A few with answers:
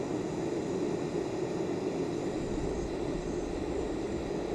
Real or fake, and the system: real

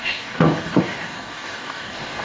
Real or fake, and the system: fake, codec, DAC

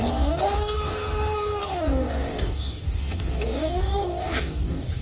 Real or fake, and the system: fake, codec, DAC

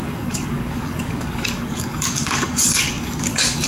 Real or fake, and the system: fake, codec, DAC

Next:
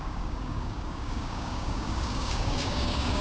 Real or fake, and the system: fake, codec, DAC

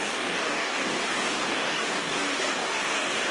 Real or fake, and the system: fake, codec, DAC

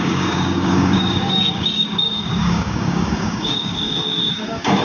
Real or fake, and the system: fake, codec, DAC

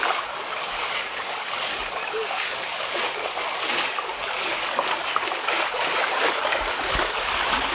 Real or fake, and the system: fake, codec, DAC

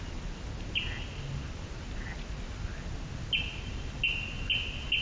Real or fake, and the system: real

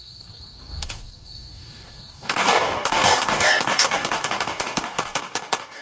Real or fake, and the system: fake, codec, DAC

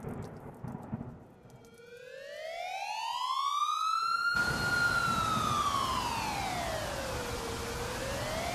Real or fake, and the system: real